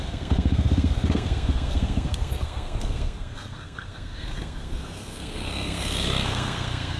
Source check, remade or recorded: remade